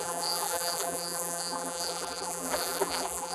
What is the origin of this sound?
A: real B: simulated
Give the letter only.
B